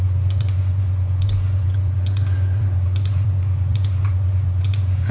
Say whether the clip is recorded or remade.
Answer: remade